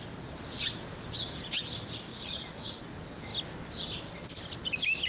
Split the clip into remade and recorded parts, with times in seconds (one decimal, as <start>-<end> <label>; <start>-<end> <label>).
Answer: 0.0-2.1 recorded; 2.1-2.8 remade; 2.8-5.1 recorded